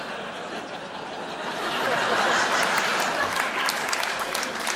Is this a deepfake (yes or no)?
no